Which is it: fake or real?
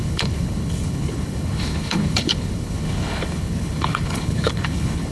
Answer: fake